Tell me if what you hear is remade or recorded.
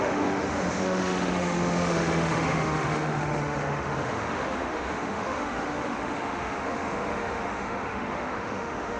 remade